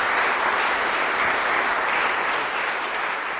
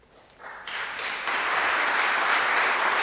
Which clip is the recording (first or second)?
first